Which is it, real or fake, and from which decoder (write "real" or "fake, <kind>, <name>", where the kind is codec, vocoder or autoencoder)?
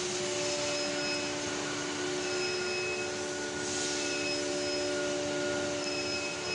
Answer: real